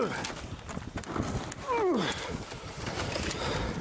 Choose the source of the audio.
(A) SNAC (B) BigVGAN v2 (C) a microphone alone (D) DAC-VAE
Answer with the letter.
C